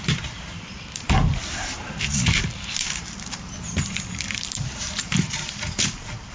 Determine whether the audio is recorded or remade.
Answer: remade